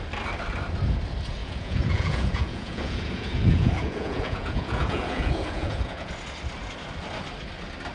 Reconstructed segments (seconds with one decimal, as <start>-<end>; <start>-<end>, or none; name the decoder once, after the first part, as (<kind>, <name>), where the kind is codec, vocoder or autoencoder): 1.4-6.1 (vocoder, Vocos)